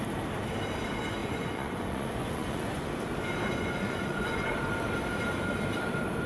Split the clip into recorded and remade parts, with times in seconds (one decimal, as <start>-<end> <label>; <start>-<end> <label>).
0.0-1.2 recorded; 1.2-2.9 remade; 2.9-3.5 recorded; 3.5-4.5 remade; 4.5-6.3 recorded